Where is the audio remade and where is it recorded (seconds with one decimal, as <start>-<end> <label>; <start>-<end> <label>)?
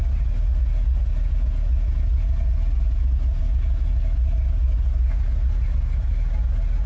0.0-6.9 recorded